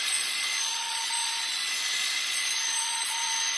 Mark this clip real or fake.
fake